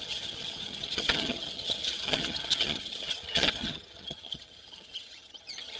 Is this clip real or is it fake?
fake